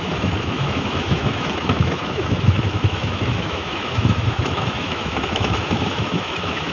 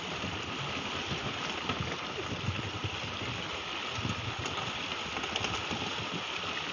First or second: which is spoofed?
first